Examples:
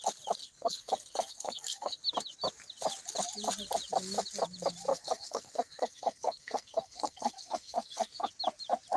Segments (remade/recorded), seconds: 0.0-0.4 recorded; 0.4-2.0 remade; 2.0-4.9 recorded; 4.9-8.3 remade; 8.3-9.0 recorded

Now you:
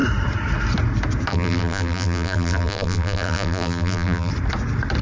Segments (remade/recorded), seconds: 0.0-1.3 recorded; 1.3-4.3 remade; 4.3-5.0 recorded

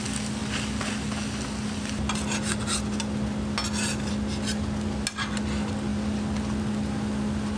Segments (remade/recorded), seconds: 0.0-7.6 recorded

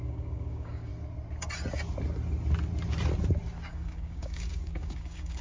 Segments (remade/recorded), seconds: 0.0-0.9 remade; 0.9-3.7 recorded; 3.7-5.4 remade

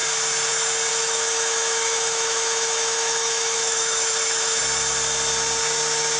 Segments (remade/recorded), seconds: 0.0-0.9 recorded; 0.9-4.6 remade; 4.6-6.2 recorded